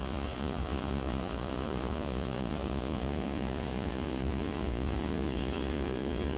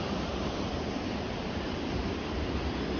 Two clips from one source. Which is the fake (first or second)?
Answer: first